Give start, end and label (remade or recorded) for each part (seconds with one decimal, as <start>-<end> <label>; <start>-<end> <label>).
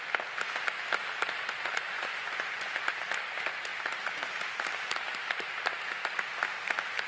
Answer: 0.0-1.7 recorded; 1.7-2.9 remade; 2.9-7.1 recorded